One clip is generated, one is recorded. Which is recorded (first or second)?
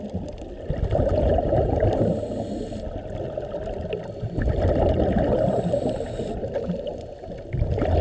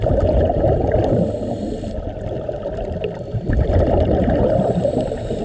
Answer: first